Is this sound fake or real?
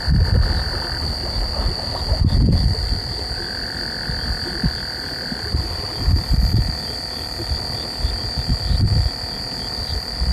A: fake